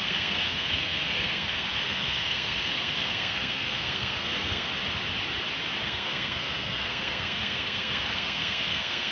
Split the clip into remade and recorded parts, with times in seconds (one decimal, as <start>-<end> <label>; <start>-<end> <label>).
0.0-4.7 remade; 4.7-5.8 recorded; 5.8-9.1 remade